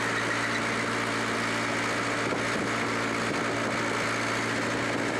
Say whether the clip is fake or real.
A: real